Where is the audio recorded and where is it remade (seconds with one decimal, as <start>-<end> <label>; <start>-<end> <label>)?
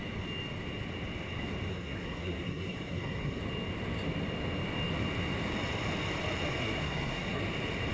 0.0-1.7 recorded; 1.7-3.4 remade; 3.4-6.6 recorded; 6.6-7.4 remade; 7.4-7.9 recorded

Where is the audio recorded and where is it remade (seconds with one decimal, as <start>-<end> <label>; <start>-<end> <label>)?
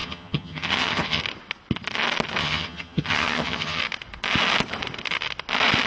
0.0-1.2 remade; 1.2-2.4 recorded; 2.4-3.8 remade; 3.8-5.9 recorded